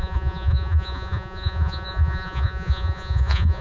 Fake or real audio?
fake